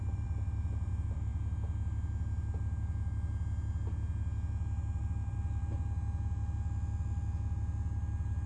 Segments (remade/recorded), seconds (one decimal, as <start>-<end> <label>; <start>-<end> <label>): 0.0-1.3 remade; 1.3-5.0 recorded; 5.0-5.6 remade; 5.6-8.5 recorded